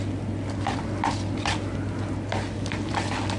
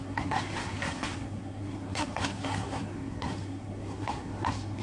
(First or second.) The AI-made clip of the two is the second